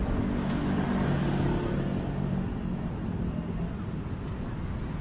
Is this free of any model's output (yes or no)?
yes